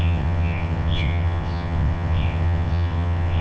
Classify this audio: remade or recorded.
remade